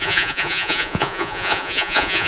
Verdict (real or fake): fake